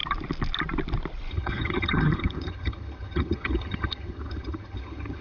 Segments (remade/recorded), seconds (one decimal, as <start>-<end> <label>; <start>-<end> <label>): 0.0-1.3 recorded; 1.3-5.2 remade